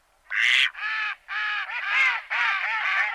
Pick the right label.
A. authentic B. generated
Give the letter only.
A